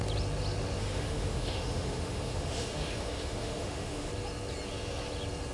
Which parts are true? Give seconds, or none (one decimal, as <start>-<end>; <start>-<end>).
0.0-0.8; 4.1-5.5